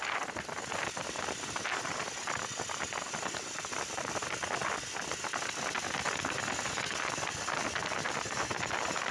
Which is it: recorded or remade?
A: recorded